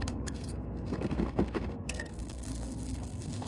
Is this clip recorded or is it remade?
remade